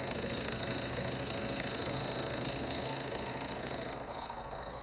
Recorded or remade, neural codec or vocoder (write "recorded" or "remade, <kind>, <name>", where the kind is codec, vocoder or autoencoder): remade, codec, SNAC